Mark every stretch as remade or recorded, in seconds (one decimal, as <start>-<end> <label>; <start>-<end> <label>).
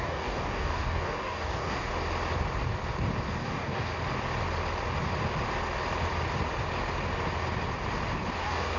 0.0-1.9 remade; 1.9-3.3 recorded; 3.3-3.9 remade; 3.9-8.4 recorded; 8.4-8.8 remade